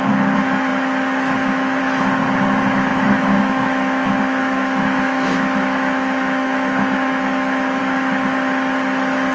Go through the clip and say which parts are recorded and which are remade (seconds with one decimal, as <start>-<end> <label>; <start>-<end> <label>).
0.0-2.9 recorded; 2.9-7.8 remade; 7.8-9.3 recorded